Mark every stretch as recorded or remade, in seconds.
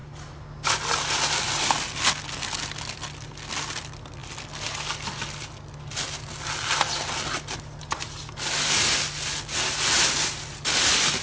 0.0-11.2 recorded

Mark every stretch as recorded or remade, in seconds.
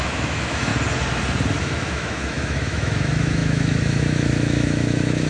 0.0-0.7 remade; 0.7-1.6 recorded; 1.6-5.3 remade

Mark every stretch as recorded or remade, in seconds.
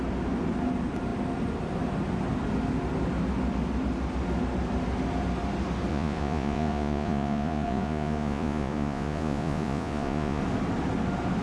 0.0-5.9 recorded; 5.9-10.4 remade; 10.4-11.4 recorded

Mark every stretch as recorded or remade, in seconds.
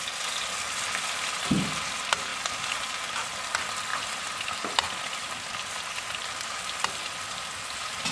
0.0-8.1 recorded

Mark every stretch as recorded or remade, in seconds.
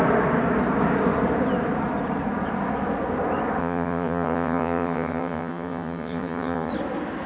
0.0-3.6 recorded; 3.6-6.7 remade; 6.7-7.3 recorded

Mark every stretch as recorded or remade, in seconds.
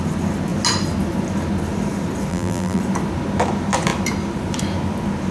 0.0-2.3 recorded; 2.3-2.8 remade; 2.8-5.3 recorded